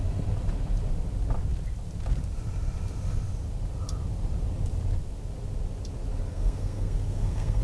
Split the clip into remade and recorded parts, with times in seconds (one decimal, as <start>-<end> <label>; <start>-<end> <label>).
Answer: 0.0-6.3 recorded; 6.3-7.6 remade